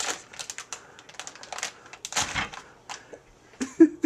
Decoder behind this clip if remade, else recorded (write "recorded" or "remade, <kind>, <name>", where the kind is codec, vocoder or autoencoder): recorded